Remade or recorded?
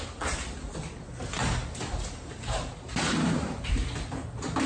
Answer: recorded